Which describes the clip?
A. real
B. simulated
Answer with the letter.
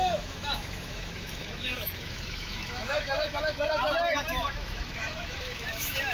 B